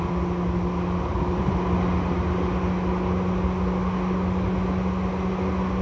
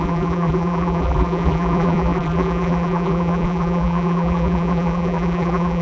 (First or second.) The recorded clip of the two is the first